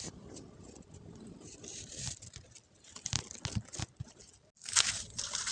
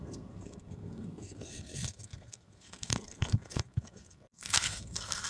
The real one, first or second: first